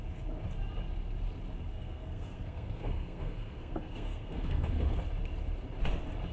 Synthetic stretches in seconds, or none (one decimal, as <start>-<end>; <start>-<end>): 1.7-5.0